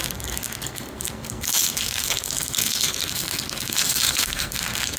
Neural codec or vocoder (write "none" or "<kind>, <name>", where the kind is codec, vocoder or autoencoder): codec, SNAC